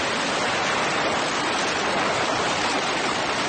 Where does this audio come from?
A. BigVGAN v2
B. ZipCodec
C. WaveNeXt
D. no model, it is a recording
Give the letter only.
A